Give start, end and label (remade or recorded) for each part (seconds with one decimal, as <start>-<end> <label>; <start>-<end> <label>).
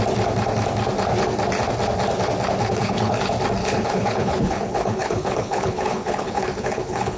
0.0-2.6 recorded; 2.6-3.2 remade; 3.2-3.6 recorded; 3.6-7.2 remade